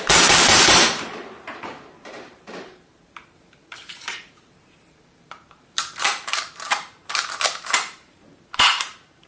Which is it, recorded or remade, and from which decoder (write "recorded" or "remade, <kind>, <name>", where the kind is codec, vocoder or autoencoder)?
remade, vocoder, BigVGAN v2